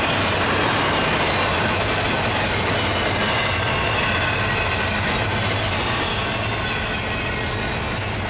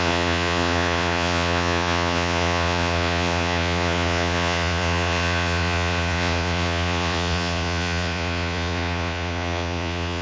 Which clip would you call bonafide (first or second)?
first